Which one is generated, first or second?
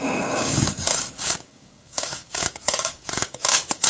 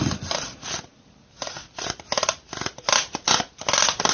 first